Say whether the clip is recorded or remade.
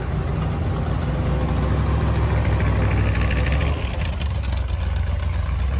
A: recorded